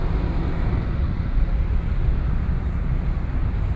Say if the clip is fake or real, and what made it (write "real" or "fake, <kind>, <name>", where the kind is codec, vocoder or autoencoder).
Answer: real